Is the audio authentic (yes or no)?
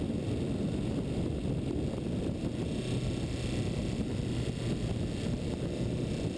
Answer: yes